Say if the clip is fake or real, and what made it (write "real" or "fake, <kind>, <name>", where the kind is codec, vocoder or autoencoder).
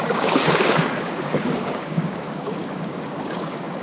fake, codec, DAC